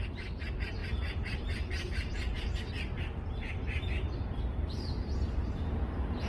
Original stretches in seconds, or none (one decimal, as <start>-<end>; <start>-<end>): none